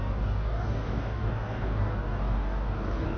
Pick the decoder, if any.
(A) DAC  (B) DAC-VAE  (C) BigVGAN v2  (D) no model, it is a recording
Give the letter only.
A